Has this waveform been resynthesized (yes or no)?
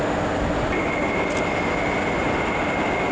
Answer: no